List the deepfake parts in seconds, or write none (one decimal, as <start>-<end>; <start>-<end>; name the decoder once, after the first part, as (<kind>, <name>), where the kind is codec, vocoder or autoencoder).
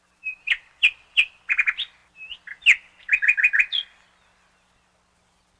none